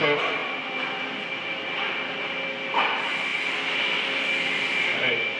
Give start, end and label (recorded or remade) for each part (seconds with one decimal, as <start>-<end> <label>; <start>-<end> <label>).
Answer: 0.0-5.4 recorded